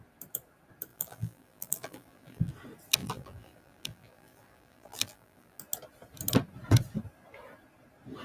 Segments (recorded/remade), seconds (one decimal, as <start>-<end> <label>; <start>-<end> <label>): 0.0-0.9 recorded; 0.9-2.5 remade; 2.5-3.0 recorded; 3.0-5.6 remade; 5.6-8.2 recorded